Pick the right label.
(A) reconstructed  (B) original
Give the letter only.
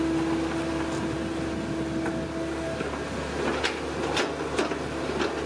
B